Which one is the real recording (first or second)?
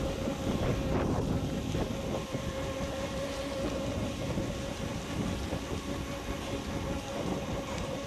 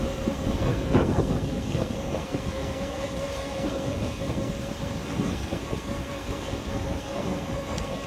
first